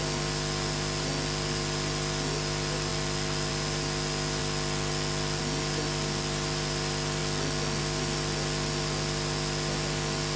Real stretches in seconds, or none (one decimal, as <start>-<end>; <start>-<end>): 0.0-10.4